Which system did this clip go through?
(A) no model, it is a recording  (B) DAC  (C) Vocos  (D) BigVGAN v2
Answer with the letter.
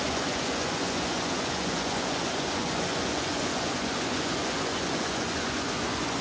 C